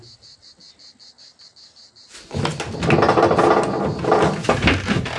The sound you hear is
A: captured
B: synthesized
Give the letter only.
A